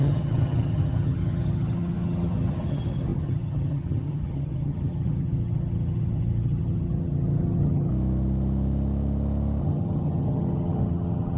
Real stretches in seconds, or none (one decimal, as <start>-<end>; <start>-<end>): 7.9-9.6